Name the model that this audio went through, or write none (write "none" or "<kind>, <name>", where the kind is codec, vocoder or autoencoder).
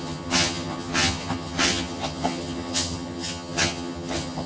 vocoder, HiFi-GAN